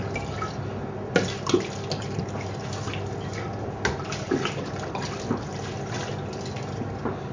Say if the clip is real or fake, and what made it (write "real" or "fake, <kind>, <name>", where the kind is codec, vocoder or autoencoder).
real